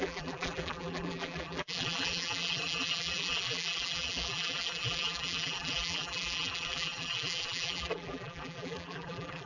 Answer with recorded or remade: remade